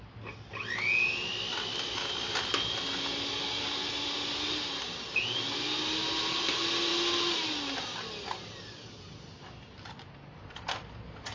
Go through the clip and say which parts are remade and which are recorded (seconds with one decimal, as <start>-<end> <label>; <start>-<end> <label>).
0.0-11.3 recorded